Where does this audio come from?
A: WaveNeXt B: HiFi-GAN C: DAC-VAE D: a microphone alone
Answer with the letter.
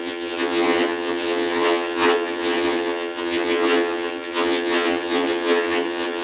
B